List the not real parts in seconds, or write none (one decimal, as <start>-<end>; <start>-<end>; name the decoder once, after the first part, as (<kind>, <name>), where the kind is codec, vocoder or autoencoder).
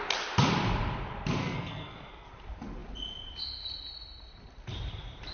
1.4-2.3 (codec, SNAC)